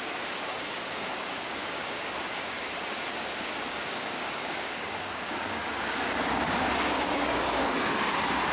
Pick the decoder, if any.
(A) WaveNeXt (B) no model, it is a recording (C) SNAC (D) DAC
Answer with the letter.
D